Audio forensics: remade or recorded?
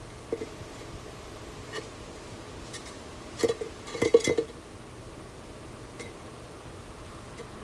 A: recorded